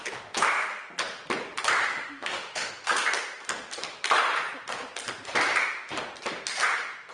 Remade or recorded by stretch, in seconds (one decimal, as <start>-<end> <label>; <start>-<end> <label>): 0.0-1.9 recorded; 1.9-2.7 remade; 2.7-7.1 recorded